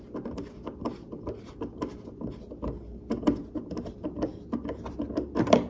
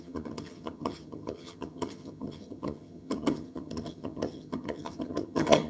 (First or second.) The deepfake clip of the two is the second